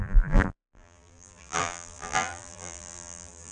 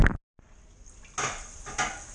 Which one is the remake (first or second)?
first